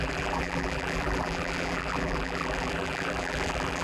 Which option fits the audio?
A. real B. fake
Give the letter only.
B